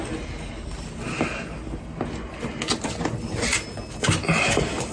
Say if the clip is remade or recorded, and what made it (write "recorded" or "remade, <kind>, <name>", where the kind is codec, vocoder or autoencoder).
recorded